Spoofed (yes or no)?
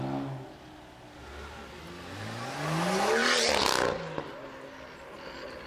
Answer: no